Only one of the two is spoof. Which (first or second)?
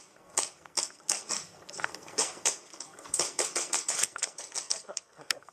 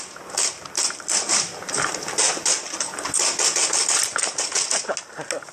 first